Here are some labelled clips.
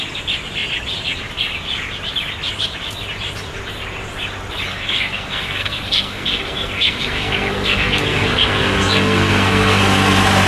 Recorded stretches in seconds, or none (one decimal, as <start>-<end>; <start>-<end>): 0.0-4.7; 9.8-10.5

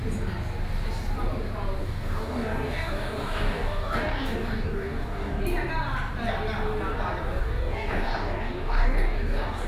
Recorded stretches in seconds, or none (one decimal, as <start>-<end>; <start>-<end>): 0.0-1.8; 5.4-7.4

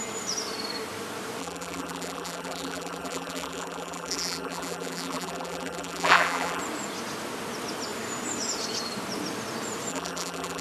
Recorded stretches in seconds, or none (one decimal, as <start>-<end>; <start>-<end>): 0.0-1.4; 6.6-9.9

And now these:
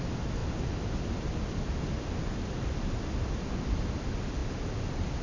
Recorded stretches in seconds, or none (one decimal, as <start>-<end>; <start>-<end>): 0.0-5.2

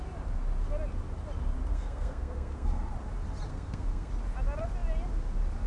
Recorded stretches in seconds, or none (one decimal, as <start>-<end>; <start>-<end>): 0.0-1.7; 2.9-3.5; 4.1-5.7

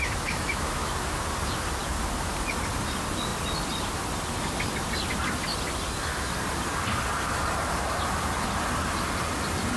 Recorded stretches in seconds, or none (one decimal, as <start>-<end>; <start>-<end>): 1.2-9.8